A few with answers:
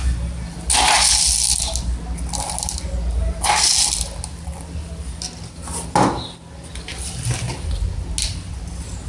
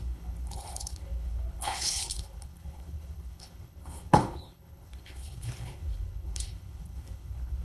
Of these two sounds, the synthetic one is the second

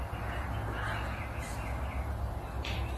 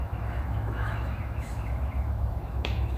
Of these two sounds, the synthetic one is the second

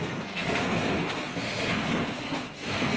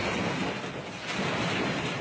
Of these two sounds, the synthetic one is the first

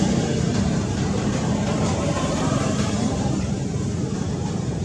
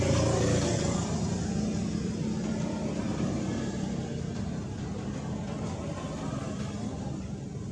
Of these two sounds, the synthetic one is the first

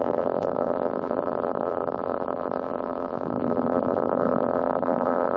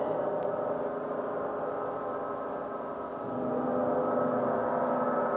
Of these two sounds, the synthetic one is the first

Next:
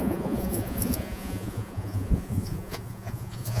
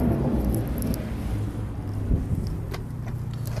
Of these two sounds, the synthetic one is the first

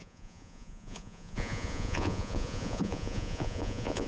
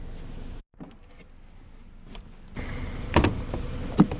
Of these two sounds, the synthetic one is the first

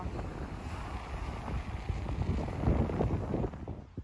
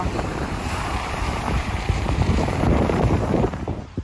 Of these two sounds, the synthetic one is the second